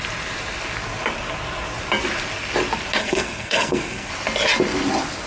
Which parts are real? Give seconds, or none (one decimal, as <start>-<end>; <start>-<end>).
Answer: 0.0-3.0; 4.1-5.3